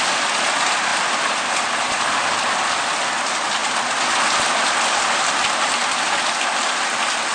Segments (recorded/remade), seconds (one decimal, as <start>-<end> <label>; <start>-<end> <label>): 0.0-3.6 remade; 3.6-4.4 recorded; 4.4-7.3 remade

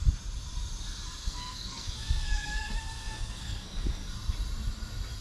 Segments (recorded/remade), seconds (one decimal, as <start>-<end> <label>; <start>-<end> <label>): 0.0-1.2 recorded; 1.2-4.1 remade; 4.1-5.2 recorded

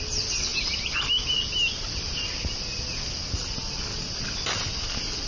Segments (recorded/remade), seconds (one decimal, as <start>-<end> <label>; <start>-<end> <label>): 0.0-5.3 recorded

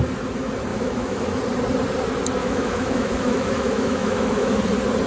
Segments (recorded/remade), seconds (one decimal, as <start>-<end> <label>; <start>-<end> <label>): 0.0-0.7 recorded; 0.7-1.4 remade; 1.4-2.4 recorded; 2.4-4.6 remade; 4.6-5.1 recorded

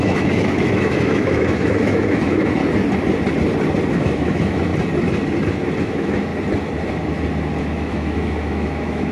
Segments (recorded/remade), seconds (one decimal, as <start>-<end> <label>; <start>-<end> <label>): 0.0-2.6 remade; 2.6-3.9 recorded; 3.9-4.7 remade; 4.7-5.8 recorded; 5.8-6.3 remade; 6.3-7.6 recorded; 7.6-9.1 remade

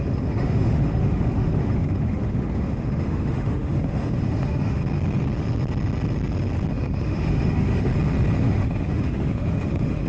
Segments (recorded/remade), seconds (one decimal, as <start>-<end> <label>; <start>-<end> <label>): 0.0-4.8 remade; 4.8-6.7 recorded; 6.7-7.9 remade; 7.9-8.4 recorded; 8.4-10.1 remade

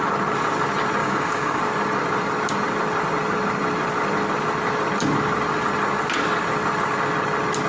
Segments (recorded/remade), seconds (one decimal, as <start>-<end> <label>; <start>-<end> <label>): 0.0-1.0 recorded; 1.0-1.6 remade; 1.6-7.7 recorded

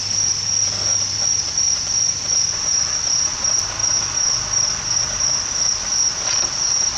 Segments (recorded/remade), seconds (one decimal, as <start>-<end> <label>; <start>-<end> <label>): 0.0-7.0 recorded